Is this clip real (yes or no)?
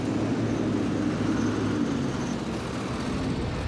yes